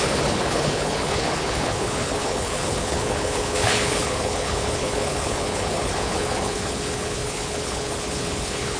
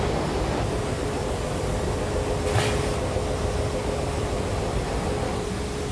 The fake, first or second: first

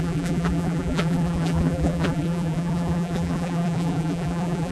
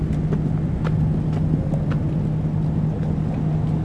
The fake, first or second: first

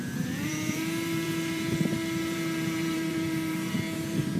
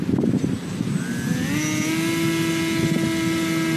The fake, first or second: first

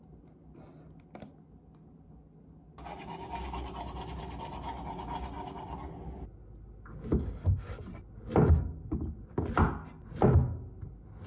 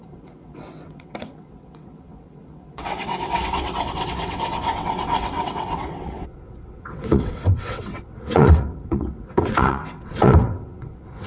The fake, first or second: second